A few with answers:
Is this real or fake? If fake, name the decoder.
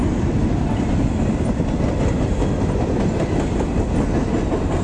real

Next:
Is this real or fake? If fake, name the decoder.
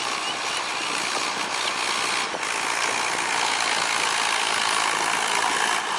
real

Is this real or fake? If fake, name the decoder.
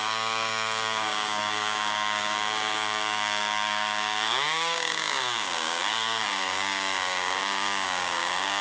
fake, codec, DAC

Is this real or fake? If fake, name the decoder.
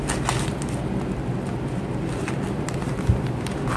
real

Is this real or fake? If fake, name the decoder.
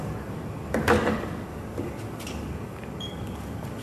fake, codec, DAC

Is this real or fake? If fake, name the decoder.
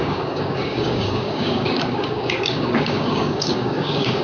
fake, codec, DAC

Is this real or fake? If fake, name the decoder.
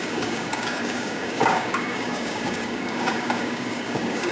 fake, codec, DAC